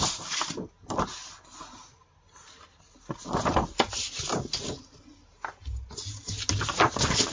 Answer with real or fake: real